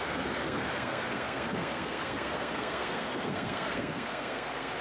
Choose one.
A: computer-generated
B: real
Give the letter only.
A